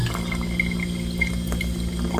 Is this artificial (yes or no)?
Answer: no